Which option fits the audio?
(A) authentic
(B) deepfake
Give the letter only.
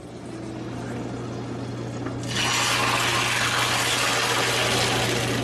A